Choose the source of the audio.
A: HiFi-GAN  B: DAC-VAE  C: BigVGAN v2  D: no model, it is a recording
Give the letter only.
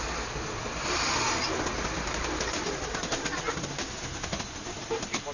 D